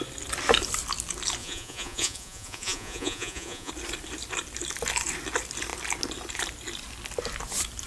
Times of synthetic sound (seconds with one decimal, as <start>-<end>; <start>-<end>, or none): 1.4-3.7